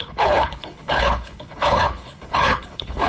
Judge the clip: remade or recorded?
remade